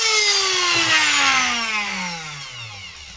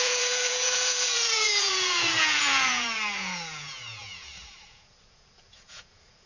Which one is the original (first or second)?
first